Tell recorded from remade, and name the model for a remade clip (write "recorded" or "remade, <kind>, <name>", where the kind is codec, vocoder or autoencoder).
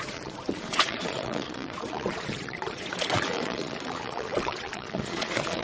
remade, vocoder, Vocos